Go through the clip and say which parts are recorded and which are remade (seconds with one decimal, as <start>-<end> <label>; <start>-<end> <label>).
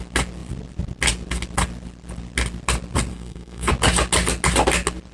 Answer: 0.0-3.1 recorded; 3.1-3.7 remade; 3.7-5.1 recorded